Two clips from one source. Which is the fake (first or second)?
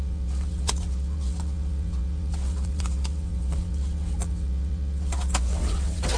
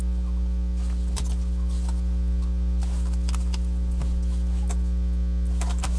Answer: first